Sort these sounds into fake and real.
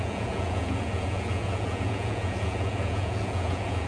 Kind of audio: fake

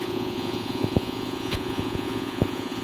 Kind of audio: fake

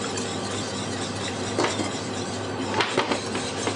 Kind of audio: real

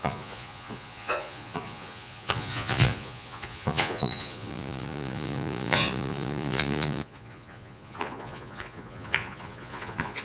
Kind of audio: fake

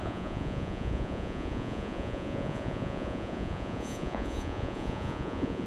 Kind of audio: fake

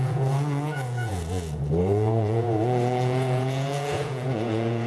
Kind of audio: fake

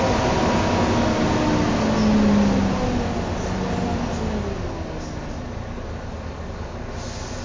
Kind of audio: real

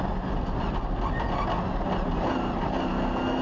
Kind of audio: real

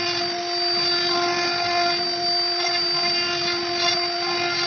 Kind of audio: real